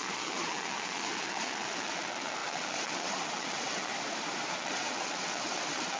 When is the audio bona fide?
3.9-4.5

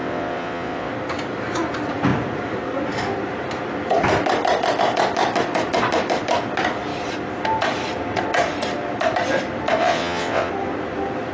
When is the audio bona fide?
0.9-9.8; 10.5-11.3

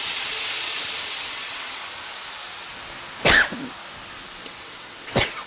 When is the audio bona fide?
1.8-4.4

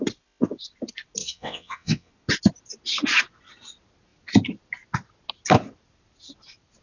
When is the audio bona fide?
0.0-1.2; 2.1-6.8

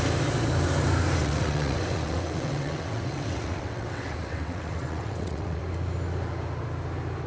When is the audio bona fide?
0.0-1.2; 5.6-7.3

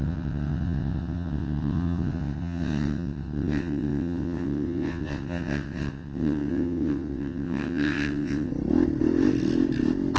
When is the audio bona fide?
8.5-10.2

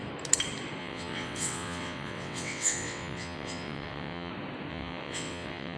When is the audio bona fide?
0.0-0.8; 4.3-4.7

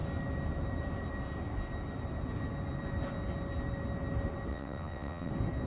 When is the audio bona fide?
0.0-4.5; 5.3-5.7